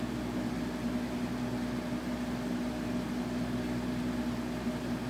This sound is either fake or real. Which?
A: real